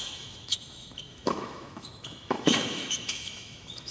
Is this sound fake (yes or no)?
yes